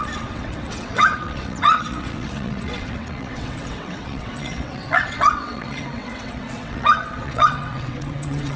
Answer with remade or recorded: remade